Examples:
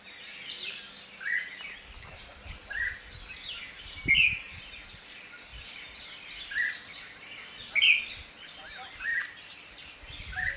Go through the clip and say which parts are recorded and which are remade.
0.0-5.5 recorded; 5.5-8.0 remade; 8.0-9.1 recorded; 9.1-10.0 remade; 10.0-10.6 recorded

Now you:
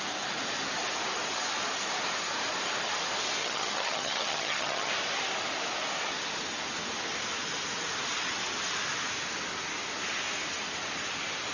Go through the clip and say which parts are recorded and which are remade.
0.0-3.4 recorded; 3.4-4.9 remade; 4.9-11.5 recorded

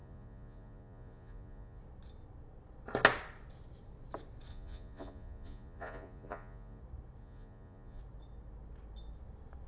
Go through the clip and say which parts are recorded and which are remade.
0.0-1.8 remade; 1.8-4.5 recorded; 4.5-6.8 remade; 6.8-7.2 recorded; 7.2-8.0 remade; 8.0-9.7 recorded

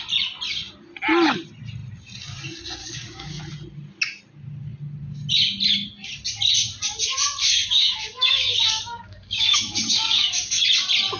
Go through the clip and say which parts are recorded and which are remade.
0.0-2.8 recorded; 2.8-3.4 remade; 3.4-7.4 recorded; 7.4-10.6 remade; 10.6-11.2 recorded

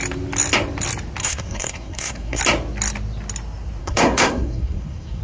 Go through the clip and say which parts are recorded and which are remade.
0.0-1.2 recorded; 1.2-2.4 remade; 2.4-3.8 recorded; 3.8-5.2 remade

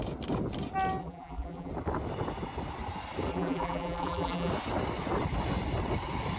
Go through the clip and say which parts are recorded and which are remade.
0.0-1.0 recorded; 1.0-1.7 remade; 1.7-3.3 recorded; 3.3-4.5 remade; 4.5-6.4 recorded

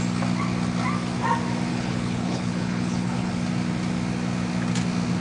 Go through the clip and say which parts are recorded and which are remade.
0.0-1.7 recorded; 1.7-3.3 remade; 3.3-5.2 recorded